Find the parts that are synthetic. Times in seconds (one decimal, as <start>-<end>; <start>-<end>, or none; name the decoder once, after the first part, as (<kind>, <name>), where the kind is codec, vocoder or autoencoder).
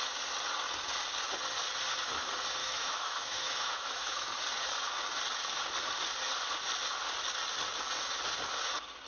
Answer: 2.6-4.3 (autoencoder, DAC-VAE)